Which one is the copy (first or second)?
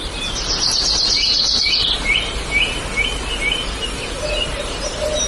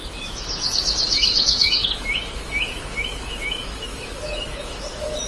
second